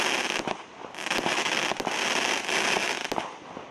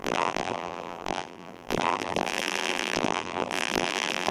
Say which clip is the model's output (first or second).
second